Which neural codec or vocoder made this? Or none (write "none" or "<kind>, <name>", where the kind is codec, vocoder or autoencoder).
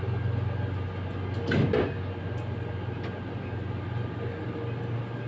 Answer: none